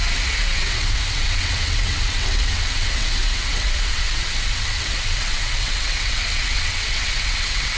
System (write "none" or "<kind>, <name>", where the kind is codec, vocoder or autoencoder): vocoder, WaveNeXt